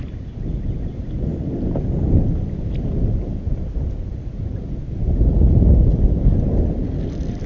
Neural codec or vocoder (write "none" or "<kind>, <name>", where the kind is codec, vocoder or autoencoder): none